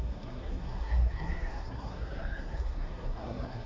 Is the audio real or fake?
fake